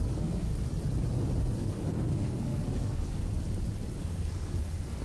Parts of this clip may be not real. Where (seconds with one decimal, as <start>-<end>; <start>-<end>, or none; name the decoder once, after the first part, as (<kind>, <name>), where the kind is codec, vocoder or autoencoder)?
0.0-0.5 (codec, SNAC); 1.4-3.2; 4.0-5.0